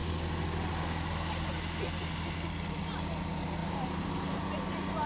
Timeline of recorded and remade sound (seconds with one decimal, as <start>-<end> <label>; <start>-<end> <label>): 0.0-3.6 recorded; 3.6-4.4 remade; 4.4-5.1 recorded